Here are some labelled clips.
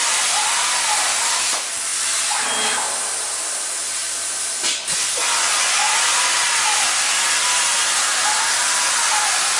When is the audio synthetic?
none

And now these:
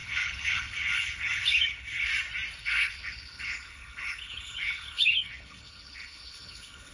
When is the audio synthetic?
0.0-2.1; 2.6-6.9

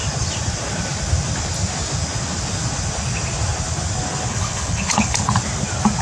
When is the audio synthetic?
4.3-5.2

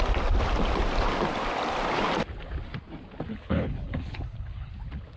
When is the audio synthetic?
3.3-4.7

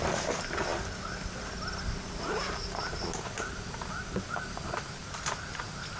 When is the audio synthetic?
none

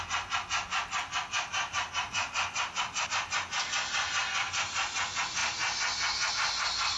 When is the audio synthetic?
none

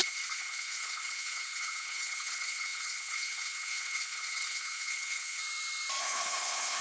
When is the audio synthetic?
0.0-5.4; 6.0-6.8

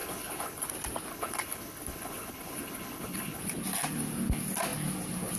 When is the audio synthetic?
0.0-0.7; 1.1-3.4